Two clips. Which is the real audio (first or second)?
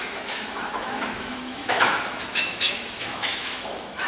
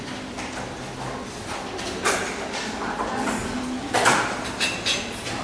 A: second